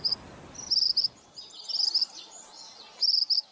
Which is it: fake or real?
real